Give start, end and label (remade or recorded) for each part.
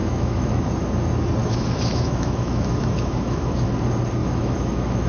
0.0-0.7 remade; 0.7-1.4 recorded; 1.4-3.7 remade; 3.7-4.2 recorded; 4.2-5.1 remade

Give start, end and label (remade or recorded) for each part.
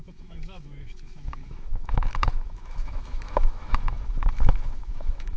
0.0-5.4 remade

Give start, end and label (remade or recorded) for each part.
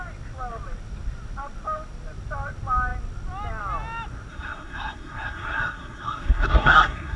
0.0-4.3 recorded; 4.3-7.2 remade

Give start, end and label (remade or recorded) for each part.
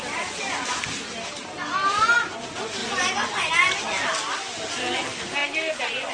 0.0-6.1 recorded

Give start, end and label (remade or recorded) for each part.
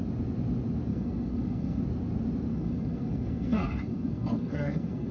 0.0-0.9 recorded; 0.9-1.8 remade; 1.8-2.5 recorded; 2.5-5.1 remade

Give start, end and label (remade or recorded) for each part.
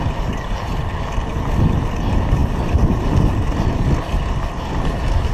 0.0-5.3 recorded